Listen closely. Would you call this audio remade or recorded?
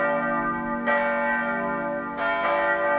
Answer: recorded